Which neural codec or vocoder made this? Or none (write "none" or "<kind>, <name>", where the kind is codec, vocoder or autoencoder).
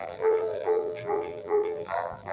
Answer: vocoder, BigVGAN v2